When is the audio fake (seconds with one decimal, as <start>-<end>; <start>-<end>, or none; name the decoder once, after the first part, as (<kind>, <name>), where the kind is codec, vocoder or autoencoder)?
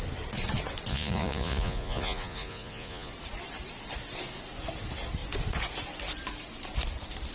0.9-3.1 (vocoder, Vocos)